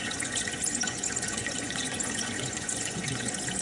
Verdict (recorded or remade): remade